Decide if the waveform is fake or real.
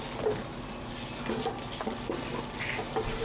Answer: real